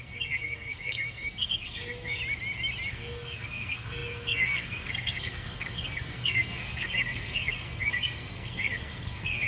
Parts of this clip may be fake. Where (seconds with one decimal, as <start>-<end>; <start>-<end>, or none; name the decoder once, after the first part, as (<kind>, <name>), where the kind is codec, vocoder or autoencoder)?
0.0-2.2 (codec, SNAC); 2.9-9.5